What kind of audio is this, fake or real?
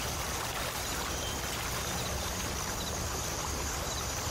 fake